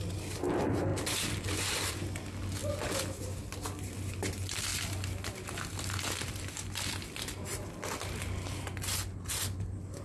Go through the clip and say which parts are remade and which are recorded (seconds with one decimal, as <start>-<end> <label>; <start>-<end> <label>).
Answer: 0.0-10.0 recorded